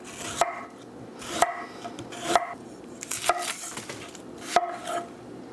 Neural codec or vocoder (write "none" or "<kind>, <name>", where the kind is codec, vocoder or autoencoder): none